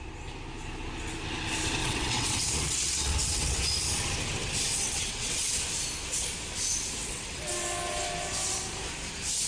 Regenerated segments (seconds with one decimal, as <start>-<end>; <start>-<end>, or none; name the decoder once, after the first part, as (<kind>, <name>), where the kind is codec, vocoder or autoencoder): 1.8-3.6 (vocoder, WaveNeXt); 4.7-5.6; 7.0-7.5